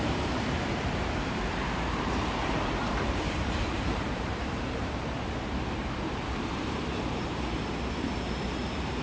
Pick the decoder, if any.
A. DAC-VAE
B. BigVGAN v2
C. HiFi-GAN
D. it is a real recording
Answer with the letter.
B